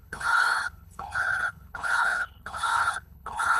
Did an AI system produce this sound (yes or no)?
yes